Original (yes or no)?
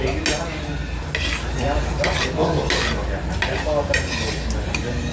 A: yes